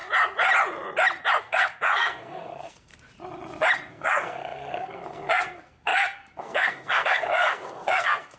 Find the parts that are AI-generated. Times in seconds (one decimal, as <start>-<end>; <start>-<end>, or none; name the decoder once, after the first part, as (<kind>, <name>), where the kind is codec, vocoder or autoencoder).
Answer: 1.4-2.9 (codec, SNAC); 3.9-8.4